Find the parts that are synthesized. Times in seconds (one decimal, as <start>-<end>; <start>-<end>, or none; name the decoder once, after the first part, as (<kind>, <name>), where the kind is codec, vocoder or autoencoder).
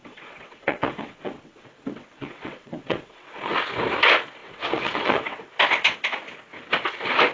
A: 0.0-3.5 (vocoder, WaveNeXt); 4.4-5.5